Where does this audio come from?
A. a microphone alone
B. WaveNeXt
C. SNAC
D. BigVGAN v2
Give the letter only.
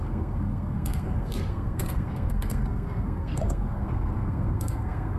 C